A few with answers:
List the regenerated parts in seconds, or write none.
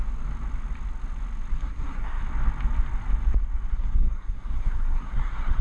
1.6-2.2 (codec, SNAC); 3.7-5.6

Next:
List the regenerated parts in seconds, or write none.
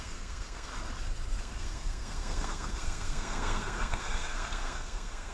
0.0-0.7 (codec, SNAC); 1.4-5.3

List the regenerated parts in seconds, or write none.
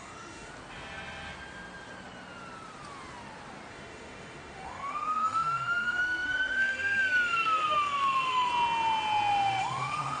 0.0-0.5 (autoencoder, DAC-VAE); 3.7-8.5; 9.6-10.2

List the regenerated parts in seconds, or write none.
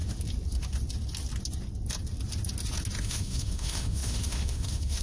3.0-5.0 (autoencoder, DAC-VAE)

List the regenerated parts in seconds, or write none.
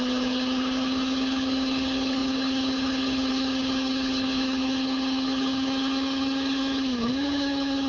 0.0-7.9 (codec, HILCodec)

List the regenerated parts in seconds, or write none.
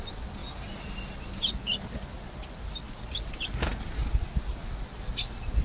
none